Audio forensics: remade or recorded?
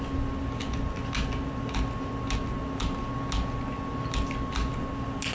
recorded